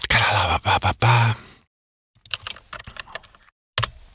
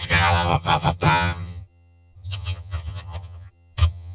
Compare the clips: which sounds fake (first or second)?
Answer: second